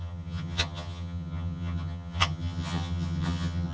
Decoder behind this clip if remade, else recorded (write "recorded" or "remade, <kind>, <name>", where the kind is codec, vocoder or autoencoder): remade, vocoder, HiFi-GAN